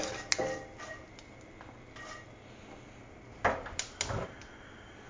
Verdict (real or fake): real